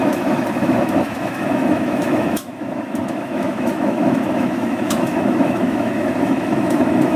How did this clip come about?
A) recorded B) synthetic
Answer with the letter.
B